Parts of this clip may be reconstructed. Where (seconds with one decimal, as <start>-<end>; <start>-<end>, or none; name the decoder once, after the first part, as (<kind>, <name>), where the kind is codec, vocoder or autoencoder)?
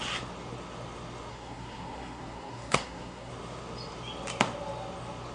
1.3-3.3 (codec, SNAC)